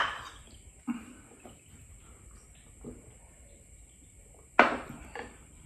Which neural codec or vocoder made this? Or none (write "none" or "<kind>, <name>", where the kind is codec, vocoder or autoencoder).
none